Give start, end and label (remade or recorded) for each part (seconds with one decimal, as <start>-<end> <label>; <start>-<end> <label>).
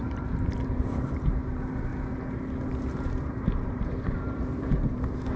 0.0-1.9 remade; 1.9-2.8 recorded; 2.8-5.4 remade